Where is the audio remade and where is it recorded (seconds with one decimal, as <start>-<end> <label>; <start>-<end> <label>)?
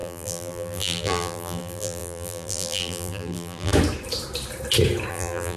0.0-3.7 remade; 3.7-5.1 recorded; 5.1-5.6 remade